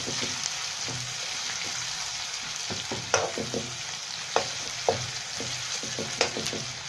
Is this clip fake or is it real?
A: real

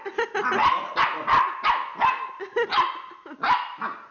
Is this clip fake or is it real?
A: real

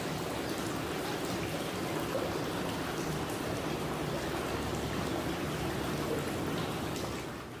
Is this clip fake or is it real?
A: real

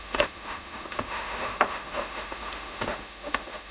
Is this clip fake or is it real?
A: fake